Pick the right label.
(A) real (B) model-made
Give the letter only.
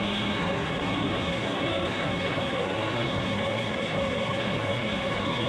B